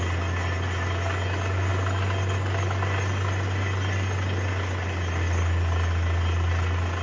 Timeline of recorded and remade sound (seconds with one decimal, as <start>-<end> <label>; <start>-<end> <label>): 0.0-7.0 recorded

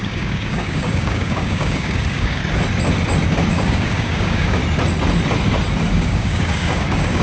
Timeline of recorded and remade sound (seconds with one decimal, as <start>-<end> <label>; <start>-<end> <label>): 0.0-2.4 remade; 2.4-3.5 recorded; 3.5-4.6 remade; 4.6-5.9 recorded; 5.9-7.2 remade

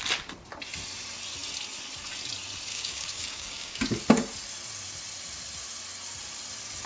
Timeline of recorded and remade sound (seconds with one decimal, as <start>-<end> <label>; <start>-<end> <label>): 0.0-2.7 recorded; 2.7-3.8 remade; 3.8-6.9 recorded

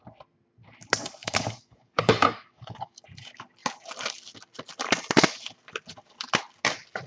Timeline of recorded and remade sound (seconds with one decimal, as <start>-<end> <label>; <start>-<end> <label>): 0.0-1.2 recorded; 1.2-3.0 remade; 3.0-7.1 recorded

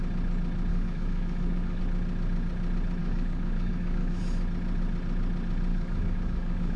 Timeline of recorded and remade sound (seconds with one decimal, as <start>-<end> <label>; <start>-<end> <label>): 0.0-0.7 recorded; 0.7-1.8 remade; 1.8-3.0 recorded; 3.0-4.2 remade; 4.2-5.7 recorded; 5.7-6.8 remade

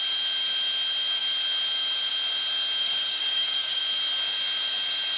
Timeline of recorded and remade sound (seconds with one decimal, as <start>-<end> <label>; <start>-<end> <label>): 0.0-2.8 recorded; 2.8-3.8 remade; 3.8-5.2 recorded